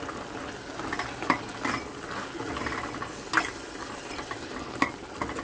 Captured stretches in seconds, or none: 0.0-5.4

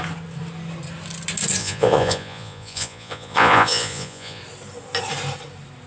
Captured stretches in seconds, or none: 0.0-1.6; 4.4-5.9

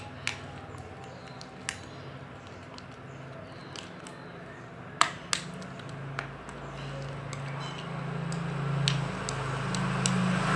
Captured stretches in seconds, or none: 0.0-10.6

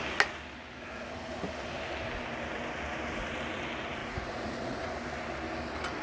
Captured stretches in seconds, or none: 0.0-4.0; 4.9-6.0